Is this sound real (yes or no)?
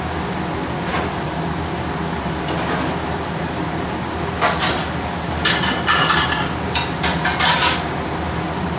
yes